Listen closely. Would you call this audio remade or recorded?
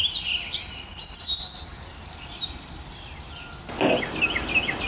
recorded